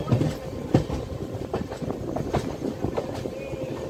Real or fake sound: real